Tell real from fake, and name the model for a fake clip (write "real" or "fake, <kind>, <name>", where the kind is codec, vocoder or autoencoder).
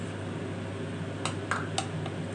real